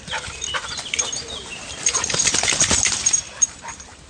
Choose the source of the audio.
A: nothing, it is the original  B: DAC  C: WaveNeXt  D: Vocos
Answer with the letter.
A